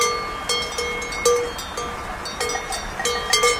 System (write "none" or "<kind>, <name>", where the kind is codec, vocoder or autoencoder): none